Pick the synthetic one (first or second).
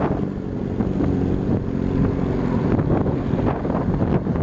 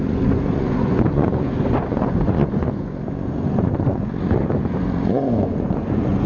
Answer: second